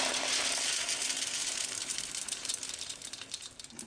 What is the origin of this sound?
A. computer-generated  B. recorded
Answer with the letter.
A